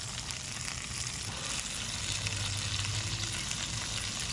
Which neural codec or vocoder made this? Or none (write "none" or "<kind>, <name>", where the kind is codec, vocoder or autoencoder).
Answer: none